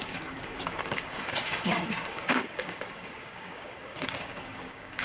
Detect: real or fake fake